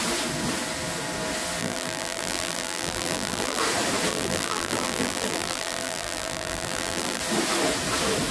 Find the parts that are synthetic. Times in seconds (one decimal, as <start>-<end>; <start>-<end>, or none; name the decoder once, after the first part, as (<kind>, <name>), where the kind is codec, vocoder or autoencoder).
1.6-3.6 (vocoder, BigVGAN v2); 4.1-7.2